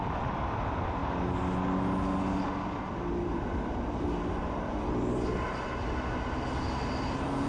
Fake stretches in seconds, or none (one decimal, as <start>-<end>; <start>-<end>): none